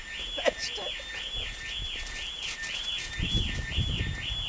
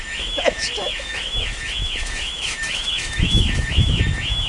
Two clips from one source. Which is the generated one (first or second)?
second